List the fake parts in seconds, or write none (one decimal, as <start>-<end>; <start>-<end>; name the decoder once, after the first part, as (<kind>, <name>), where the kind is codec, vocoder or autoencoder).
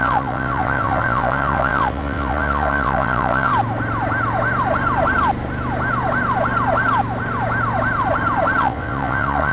0.0-3.5 (vocoder, WaveNeXt); 8.6-9.5